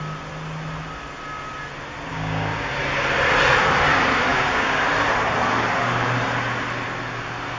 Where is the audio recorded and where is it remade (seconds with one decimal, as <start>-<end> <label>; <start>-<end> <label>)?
0.0-2.1 recorded; 2.1-2.7 remade; 2.7-4.3 recorded; 4.3-4.8 remade; 4.8-7.6 recorded